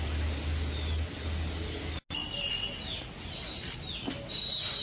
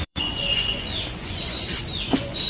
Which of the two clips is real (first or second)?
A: first